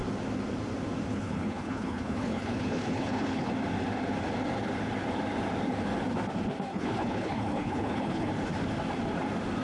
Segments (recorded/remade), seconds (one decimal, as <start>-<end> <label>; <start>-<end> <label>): 0.0-1.1 recorded; 1.1-3.5 remade; 3.5-6.7 recorded; 6.7-8.3 remade; 8.3-9.6 recorded